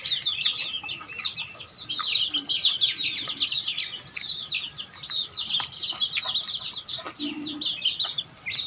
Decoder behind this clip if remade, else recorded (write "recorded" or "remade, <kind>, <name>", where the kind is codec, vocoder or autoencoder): recorded